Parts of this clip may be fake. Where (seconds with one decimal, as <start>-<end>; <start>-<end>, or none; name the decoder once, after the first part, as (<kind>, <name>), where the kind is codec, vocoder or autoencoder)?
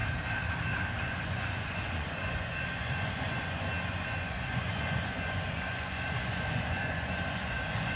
1.1-8.0 (vocoder, Vocos)